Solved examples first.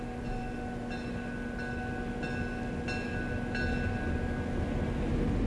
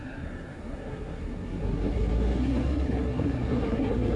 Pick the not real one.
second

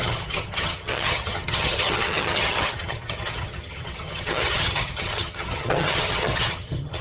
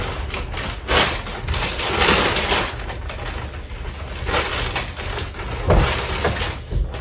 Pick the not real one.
first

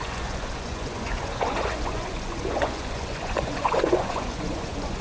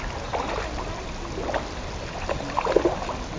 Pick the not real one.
first